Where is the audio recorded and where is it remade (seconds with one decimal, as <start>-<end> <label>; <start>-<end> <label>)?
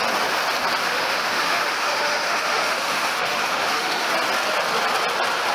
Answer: 0.0-0.8 recorded; 0.8-4.1 remade; 4.1-5.5 recorded